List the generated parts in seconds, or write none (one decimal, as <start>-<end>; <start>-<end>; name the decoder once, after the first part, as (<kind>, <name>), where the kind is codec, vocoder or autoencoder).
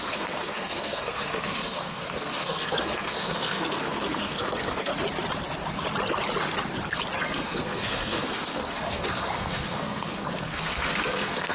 0.0-4.9 (codec, SNAC); 7.2-11.5